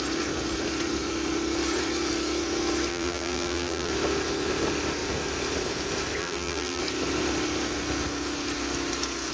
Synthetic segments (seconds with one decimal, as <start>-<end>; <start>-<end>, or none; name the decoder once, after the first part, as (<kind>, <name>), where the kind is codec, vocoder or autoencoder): 2.9-3.9 (vocoder, BigVGAN v2); 6.2-6.8